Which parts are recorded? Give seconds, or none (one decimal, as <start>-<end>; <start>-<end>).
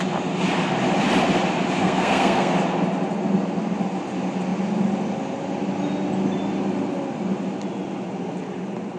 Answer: 0.0-1.8; 2.5-9.0